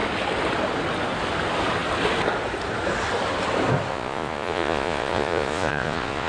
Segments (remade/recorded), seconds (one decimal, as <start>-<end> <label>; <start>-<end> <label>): 0.0-3.9 recorded; 3.9-6.3 remade